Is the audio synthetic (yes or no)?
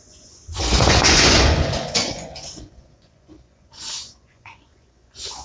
yes